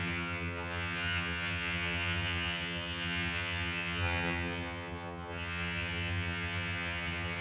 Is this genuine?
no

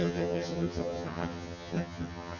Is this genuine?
no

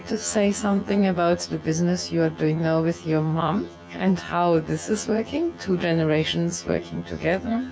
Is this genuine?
no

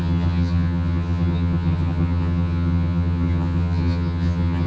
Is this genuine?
no